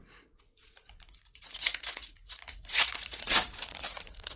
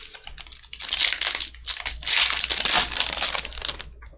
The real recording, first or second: second